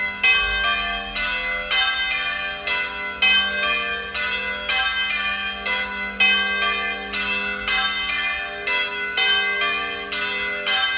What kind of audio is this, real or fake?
real